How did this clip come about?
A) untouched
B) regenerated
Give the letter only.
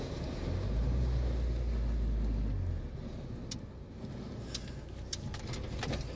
A